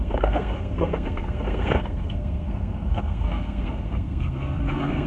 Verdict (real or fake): fake